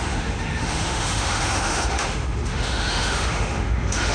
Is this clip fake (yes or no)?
yes